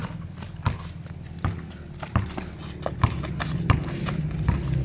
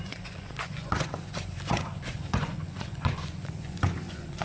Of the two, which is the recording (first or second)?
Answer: first